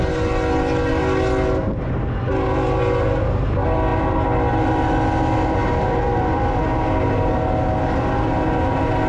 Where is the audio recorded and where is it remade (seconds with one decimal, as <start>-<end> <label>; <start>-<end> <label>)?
0.0-9.1 recorded